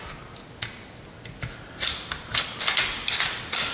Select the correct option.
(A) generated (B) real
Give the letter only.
B